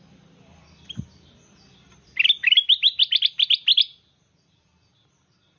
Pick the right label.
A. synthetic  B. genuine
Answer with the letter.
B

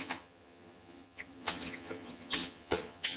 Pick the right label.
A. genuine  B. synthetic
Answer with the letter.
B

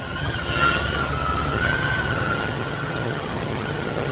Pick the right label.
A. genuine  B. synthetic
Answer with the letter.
B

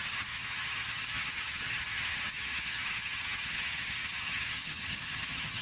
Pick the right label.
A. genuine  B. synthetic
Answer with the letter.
B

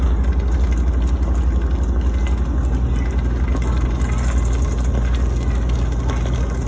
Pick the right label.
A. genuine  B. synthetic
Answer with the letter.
A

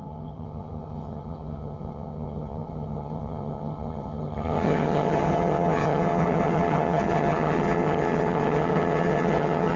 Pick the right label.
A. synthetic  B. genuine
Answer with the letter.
A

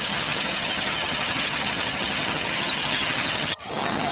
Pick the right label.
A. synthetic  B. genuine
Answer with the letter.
A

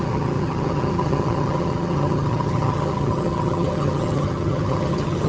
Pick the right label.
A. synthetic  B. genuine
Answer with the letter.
A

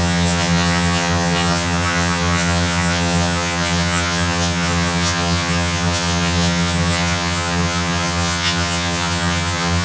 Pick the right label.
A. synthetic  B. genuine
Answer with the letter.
A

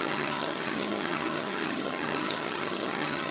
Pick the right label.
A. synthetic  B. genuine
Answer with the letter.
A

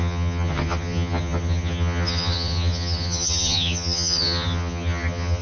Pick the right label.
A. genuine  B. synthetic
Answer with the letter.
B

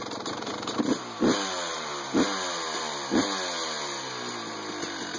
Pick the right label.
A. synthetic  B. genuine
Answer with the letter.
B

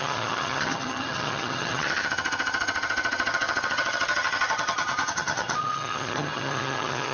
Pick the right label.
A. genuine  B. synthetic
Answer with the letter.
B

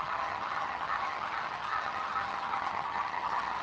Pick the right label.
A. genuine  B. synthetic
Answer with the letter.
B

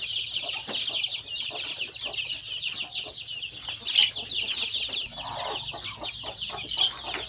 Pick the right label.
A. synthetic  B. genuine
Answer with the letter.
B